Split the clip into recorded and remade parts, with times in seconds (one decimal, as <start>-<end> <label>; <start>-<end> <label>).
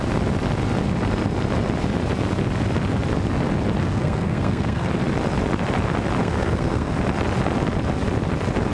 0.0-3.8 recorded; 3.8-4.9 remade; 4.9-6.2 recorded; 6.2-6.9 remade; 6.9-8.7 recorded